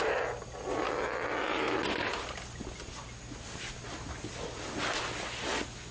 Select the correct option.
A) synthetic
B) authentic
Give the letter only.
B